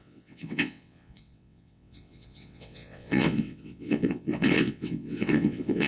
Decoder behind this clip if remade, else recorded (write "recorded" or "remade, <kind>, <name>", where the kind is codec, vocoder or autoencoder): remade, vocoder, WaveNeXt